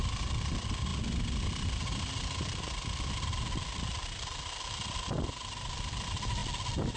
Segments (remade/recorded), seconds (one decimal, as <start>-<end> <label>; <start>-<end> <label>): 0.0-7.0 recorded